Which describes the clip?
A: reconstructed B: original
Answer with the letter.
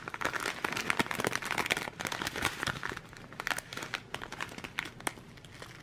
B